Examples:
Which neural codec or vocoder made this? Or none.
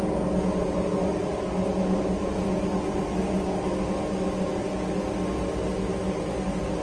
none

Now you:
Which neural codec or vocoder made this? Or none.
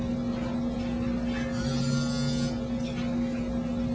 none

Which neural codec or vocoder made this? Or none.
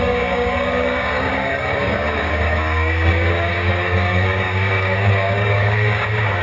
codec, DAC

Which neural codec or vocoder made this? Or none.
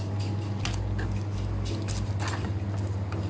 none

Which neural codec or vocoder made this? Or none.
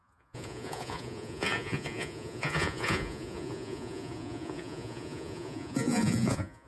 vocoder, Vocos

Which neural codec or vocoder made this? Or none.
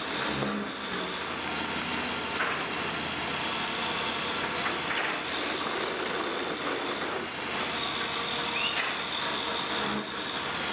none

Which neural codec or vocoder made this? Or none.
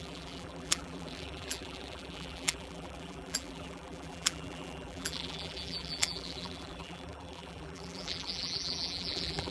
vocoder, BigVGAN v2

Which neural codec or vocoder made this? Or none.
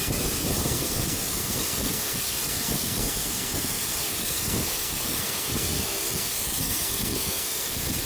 codec, SNAC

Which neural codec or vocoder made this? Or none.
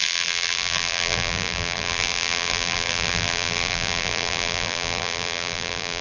vocoder, BigVGAN v2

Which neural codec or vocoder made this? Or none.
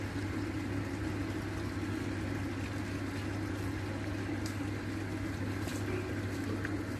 none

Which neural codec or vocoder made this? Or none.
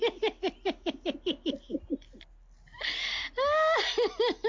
none